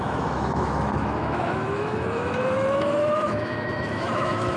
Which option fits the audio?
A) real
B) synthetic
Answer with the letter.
B